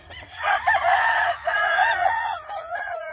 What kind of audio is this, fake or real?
fake